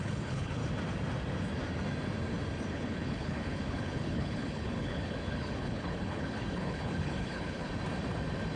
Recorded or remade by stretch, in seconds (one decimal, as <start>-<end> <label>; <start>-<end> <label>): 0.0-0.6 remade; 0.6-2.7 recorded; 2.7-7.7 remade; 7.7-8.6 recorded